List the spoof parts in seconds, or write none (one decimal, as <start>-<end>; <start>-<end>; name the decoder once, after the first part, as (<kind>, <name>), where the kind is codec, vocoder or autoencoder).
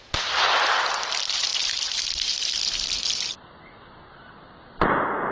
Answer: none